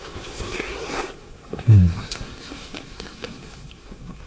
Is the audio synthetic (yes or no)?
yes